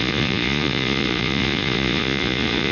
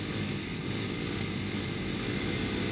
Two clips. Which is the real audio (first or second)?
second